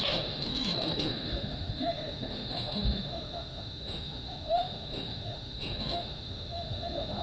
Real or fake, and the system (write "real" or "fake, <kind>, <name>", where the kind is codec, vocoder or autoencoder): fake, autoencoder, DAC-VAE